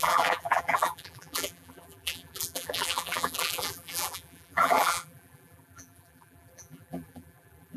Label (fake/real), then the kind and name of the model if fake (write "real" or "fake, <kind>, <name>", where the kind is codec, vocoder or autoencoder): fake, vocoder, BigVGAN v2